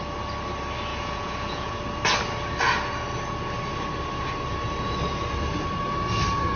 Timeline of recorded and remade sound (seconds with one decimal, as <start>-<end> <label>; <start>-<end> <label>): 0.0-0.9 recorded; 0.9-1.8 remade; 1.8-6.6 recorded